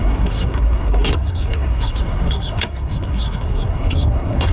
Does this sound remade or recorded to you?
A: remade